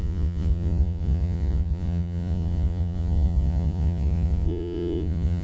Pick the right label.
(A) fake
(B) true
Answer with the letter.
A